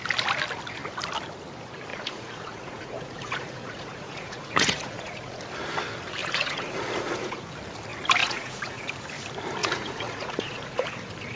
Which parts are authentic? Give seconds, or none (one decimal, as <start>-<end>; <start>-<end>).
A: 0.0-1.9; 5.4-6.2; 7.4-8.2; 8.9-9.6; 10.8-11.4